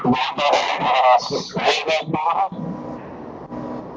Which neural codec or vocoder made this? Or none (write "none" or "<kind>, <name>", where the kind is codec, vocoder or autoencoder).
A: none